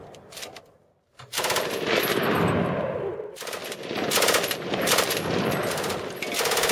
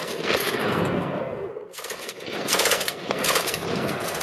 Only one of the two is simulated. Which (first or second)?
second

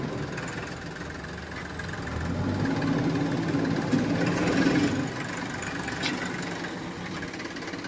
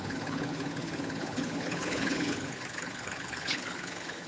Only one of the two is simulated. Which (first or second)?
second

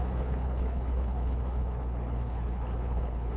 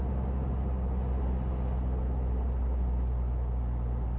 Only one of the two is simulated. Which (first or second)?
first